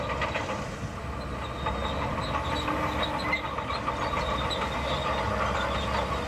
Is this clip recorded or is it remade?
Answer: recorded